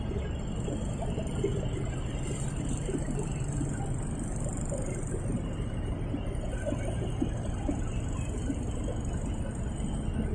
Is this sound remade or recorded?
recorded